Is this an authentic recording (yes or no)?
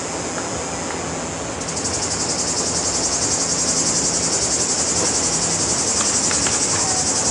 yes